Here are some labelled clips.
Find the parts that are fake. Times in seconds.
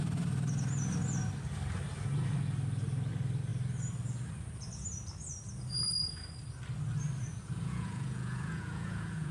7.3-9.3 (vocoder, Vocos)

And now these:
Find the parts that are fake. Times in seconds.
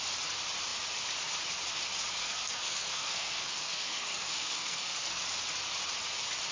2.2-5.2 (codec, SNAC)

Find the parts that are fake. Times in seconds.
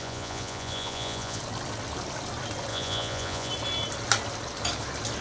0.0-1.4 (vocoder, Vocos); 2.7-3.5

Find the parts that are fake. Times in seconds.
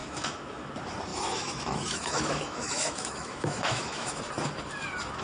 0.0-0.7 (autoencoder, DAC-VAE); 1.1-4.2